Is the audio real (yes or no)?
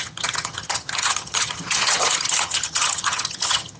no